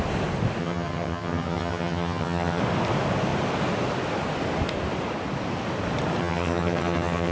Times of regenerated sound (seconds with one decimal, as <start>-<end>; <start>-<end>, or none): 0.6-2.6; 6.2-7.3